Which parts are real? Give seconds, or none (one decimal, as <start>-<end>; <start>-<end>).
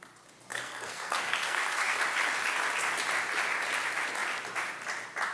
0.0-0.5; 2.0-5.3